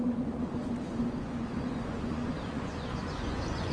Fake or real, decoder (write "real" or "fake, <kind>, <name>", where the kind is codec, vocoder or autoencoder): fake, vocoder, Vocos